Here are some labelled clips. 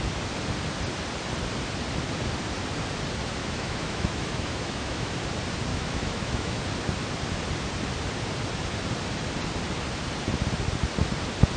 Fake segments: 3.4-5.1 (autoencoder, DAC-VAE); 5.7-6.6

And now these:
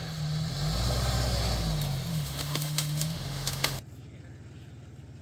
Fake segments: 2.1-3.8 (autoencoder, DAC-VAE)